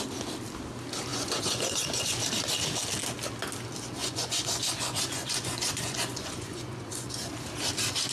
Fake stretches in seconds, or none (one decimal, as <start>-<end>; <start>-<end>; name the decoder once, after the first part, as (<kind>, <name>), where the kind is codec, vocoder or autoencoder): 1.1-2.2 (vocoder, Vocos); 4.0-7.3